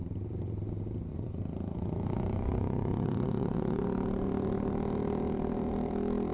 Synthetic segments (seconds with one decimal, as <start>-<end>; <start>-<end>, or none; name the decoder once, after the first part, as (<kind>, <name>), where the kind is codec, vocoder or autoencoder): 1.1-3.8 (vocoder, Vocos)